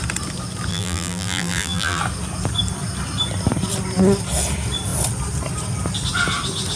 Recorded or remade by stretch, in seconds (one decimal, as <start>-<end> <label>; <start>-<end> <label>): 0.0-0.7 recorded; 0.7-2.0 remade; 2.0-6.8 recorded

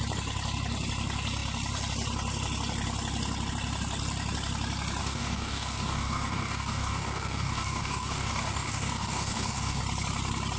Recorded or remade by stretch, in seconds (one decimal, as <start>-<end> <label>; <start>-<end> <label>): 0.0-5.0 recorded; 5.0-9.8 remade; 9.8-10.6 recorded

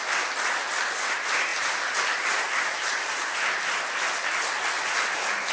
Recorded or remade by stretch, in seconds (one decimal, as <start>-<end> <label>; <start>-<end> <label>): 0.0-1.5 recorded; 1.5-3.5 remade; 3.5-5.5 recorded

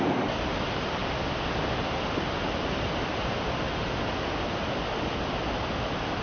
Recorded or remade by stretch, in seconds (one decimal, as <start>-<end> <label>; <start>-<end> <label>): 0.0-1.0 recorded; 1.0-4.7 remade; 4.7-6.2 recorded

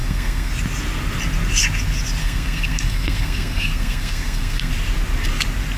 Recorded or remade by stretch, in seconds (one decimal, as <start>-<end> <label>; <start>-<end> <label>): 0.0-0.5 remade; 0.5-2.2 recorded; 2.2-4.7 remade; 4.7-5.8 recorded

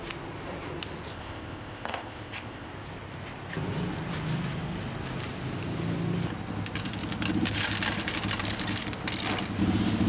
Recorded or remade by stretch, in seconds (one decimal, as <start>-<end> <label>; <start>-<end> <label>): 0.0-1.1 recorded; 1.1-2.7 remade; 2.7-10.1 recorded

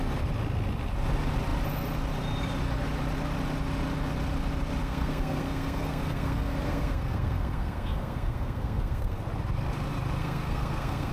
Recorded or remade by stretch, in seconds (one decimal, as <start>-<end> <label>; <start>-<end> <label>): 0.0-4.8 recorded; 4.8-9.2 remade; 9.2-10.2 recorded; 10.2-11.1 remade

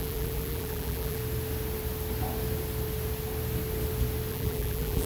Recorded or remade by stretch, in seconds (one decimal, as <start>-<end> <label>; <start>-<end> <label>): 0.0-1.2 remade; 1.2-4.3 recorded; 4.3-5.1 remade